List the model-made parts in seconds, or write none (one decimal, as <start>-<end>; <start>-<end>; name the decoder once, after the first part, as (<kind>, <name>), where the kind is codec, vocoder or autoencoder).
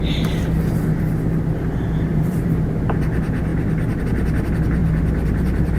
2.1-2.7 (vocoder, BigVGAN v2); 4.8-5.8